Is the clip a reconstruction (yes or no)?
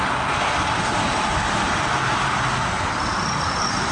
no